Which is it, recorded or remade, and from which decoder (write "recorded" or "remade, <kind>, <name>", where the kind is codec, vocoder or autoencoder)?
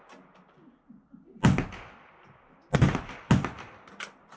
recorded